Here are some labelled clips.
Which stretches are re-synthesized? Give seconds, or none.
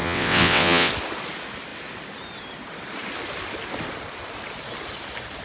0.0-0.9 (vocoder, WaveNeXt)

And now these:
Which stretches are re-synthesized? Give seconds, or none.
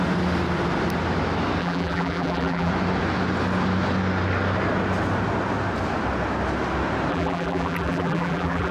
1.6-2.7 (vocoder, BigVGAN v2); 7.1-8.7